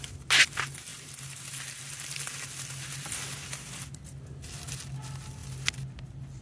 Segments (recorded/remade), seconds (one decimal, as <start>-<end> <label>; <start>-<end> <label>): 0.0-6.4 recorded